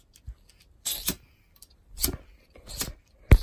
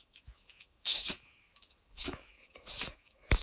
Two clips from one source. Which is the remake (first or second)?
second